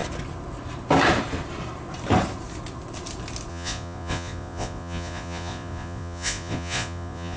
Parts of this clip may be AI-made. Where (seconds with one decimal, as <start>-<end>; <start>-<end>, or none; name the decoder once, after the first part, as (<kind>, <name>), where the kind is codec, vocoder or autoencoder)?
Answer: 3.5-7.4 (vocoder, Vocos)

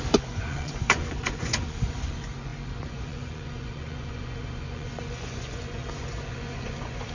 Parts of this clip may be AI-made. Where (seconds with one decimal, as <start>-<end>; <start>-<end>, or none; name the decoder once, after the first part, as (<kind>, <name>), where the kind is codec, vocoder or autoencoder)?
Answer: 0.0-7.1 (vocoder, Vocos)

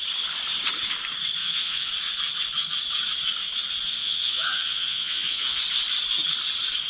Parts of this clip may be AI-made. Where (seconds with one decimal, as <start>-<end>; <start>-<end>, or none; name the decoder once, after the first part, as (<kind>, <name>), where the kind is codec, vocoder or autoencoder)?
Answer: 1.4-1.9 (vocoder, Vocos); 4.0-5.6

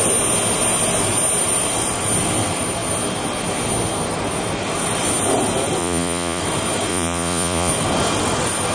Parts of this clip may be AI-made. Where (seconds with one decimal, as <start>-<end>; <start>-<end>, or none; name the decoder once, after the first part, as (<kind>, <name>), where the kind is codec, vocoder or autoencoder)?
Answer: 5.8-6.4 (vocoder, Vocos); 6.9-7.7

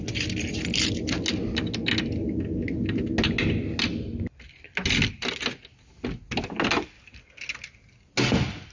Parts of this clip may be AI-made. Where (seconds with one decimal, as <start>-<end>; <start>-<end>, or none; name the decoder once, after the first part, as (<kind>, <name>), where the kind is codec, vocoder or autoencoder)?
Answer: none

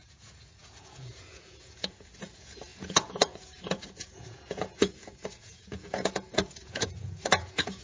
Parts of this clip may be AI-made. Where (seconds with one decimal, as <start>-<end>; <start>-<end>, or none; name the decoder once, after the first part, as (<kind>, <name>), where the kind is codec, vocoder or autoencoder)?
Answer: 0.0-7.8 (vocoder, Vocos)